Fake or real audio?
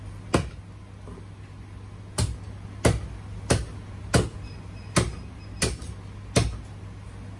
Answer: real